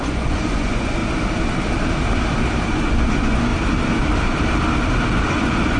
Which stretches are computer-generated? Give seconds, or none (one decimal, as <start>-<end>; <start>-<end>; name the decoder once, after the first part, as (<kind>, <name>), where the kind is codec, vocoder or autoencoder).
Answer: 0.0-1.0 (vocoder, Vocos); 2.7-3.5; 5.3-5.8